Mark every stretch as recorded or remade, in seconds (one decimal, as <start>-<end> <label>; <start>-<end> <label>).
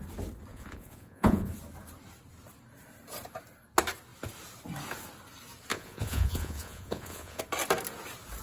0.0-0.5 recorded; 0.5-1.5 remade; 1.5-5.7 recorded; 5.7-7.4 remade; 7.4-8.4 recorded